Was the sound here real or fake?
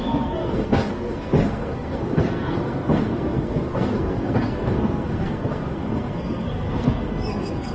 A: fake